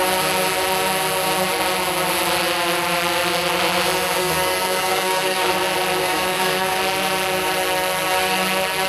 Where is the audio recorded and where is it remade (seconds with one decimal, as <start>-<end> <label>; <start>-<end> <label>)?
0.0-4.2 recorded; 4.2-5.5 remade; 5.5-6.0 recorded; 6.0-6.8 remade; 6.8-8.9 recorded

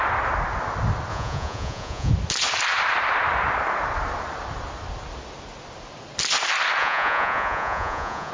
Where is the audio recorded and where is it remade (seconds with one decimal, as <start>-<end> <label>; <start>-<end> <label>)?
0.0-1.1 recorded; 1.1-2.1 remade; 2.1-6.8 recorded; 6.8-8.3 remade

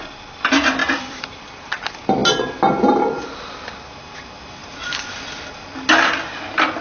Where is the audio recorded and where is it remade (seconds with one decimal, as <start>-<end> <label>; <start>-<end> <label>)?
0.0-0.8 recorded; 0.8-1.8 remade; 1.8-4.6 recorded; 4.6-5.2 remade; 5.2-6.8 recorded